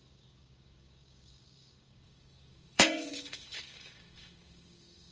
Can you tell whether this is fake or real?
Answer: fake